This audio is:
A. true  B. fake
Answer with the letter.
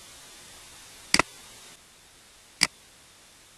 A